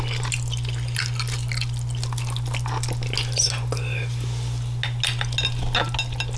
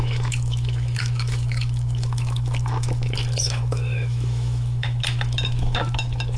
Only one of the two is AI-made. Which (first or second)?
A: second